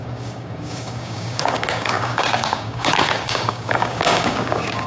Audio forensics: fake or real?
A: fake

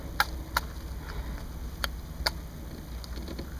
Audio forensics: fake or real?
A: real